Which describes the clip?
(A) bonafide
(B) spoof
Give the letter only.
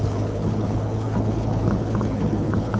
B